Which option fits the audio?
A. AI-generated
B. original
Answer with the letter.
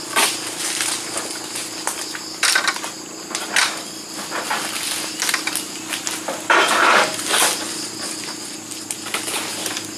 B